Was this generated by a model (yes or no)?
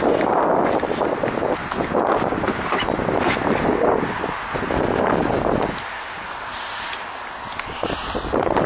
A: no